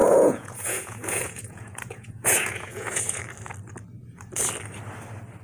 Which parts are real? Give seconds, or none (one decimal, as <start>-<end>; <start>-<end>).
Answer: 3.2-5.4